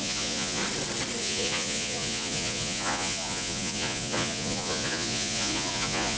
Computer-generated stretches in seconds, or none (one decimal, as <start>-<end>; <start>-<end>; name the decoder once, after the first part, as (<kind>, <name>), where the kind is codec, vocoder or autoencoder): 0.0-0.6 (vocoder, Vocos); 1.2-6.2